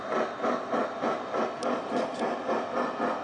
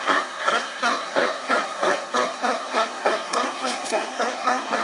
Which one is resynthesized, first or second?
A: second